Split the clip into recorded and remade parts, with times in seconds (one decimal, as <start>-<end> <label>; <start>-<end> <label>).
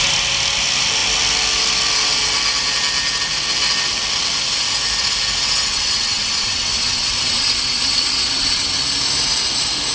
0.0-5.7 recorded; 5.7-8.8 remade; 8.8-9.9 recorded